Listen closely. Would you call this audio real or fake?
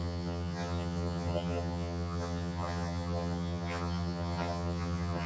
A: fake